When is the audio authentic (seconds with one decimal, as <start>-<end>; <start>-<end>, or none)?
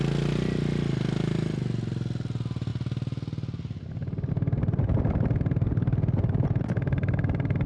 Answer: 0.0-7.7